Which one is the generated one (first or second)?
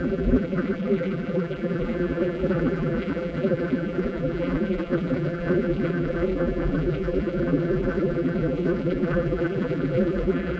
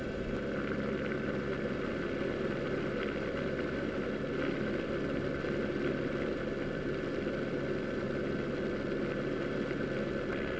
first